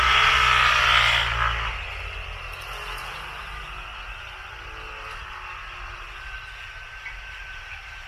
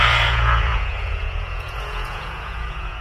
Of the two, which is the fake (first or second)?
second